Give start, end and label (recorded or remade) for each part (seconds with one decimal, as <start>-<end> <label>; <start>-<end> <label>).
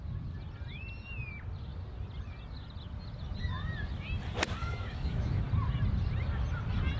0.0-4.6 recorded; 4.6-5.4 remade; 5.4-7.0 recorded